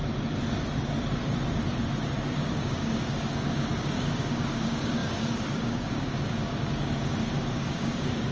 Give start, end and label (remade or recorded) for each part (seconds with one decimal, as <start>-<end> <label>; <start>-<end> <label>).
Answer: 0.0-2.2 recorded; 2.2-8.3 remade